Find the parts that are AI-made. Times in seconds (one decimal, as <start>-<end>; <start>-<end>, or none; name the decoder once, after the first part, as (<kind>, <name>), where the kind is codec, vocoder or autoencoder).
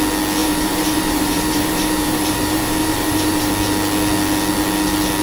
0.4-3.5 (vocoder, BigVGAN v2)